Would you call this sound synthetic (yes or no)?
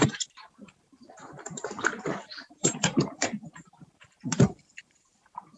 yes